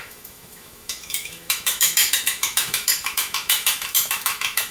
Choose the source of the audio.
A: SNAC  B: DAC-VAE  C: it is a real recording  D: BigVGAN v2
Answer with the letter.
B